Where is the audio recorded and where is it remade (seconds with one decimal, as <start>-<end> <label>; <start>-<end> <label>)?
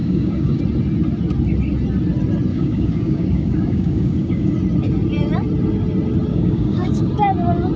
0.0-0.6 remade; 0.6-2.5 recorded; 2.5-4.5 remade; 4.5-6.3 recorded; 6.3-7.1 remade; 7.1-7.8 recorded